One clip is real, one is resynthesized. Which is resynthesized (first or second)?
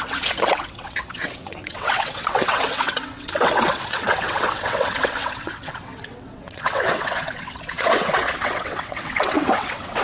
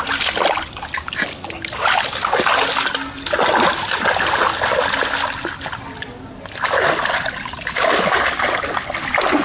first